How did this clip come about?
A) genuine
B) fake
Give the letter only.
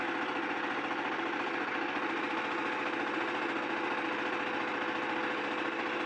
A